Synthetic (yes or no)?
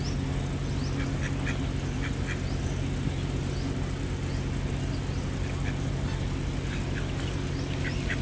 no